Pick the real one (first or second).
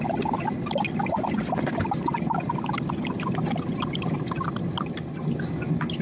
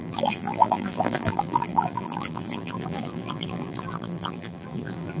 first